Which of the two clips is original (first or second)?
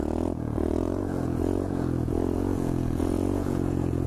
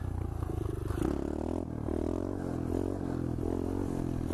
second